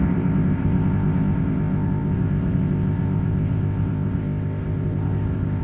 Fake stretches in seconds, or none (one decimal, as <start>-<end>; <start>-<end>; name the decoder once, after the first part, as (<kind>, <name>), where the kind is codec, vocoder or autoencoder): 0.0-5.6 (codec, ZipCodec)